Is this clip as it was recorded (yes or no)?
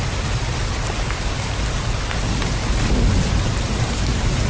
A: yes